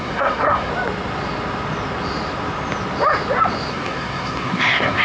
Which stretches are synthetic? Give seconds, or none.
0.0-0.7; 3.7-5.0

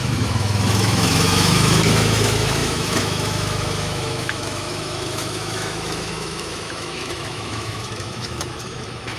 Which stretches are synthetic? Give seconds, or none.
0.0-9.2

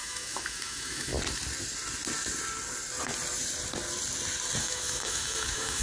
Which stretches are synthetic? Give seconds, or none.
0.0-1.1; 4.6-5.8

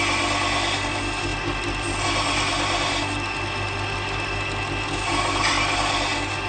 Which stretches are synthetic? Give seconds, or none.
none